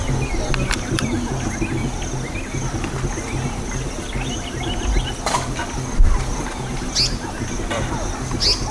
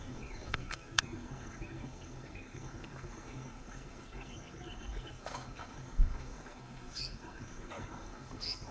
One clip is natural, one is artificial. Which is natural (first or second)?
first